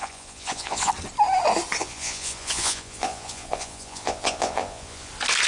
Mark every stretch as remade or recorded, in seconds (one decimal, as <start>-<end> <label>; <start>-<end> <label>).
0.0-0.9 remade; 0.9-1.8 recorded; 1.8-5.1 remade; 5.1-5.5 recorded